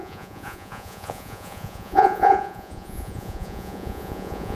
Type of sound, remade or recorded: remade